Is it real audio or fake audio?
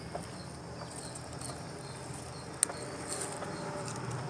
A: real